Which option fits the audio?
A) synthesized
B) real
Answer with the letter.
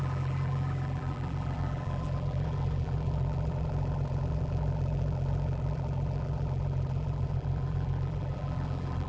A